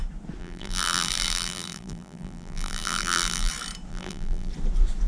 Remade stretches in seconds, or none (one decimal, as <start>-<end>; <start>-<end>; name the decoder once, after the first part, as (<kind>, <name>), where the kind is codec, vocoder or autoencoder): 0.4-3.5 (vocoder, BigVGAN v2); 3.9-4.5